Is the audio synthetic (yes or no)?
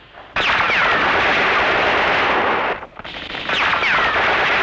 yes